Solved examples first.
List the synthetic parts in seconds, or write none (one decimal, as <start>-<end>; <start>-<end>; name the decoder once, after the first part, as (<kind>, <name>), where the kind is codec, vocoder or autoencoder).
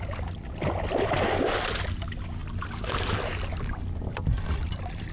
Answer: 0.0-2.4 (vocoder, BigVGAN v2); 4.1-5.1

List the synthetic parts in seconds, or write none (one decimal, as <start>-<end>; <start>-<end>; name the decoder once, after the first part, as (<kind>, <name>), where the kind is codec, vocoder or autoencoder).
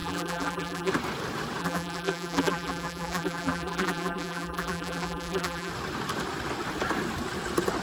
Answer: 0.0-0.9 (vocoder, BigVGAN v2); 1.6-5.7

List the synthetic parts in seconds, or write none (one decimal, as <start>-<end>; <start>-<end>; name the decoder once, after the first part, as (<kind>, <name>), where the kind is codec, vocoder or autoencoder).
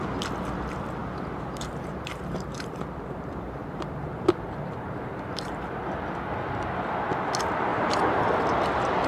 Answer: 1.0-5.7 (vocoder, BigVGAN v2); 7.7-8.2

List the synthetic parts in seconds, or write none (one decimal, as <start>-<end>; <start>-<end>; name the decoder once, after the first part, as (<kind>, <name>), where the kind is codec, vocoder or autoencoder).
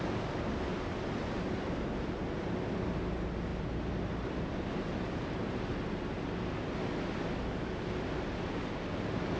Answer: 0.7-2.4 (vocoder, BigVGAN v2); 3.5-5.2